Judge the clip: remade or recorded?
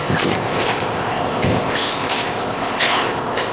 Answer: remade